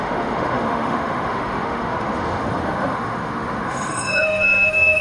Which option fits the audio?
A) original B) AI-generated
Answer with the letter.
B